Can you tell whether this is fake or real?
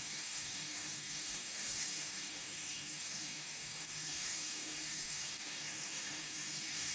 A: fake